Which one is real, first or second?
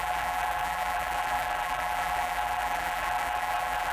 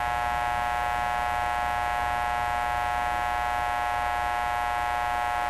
second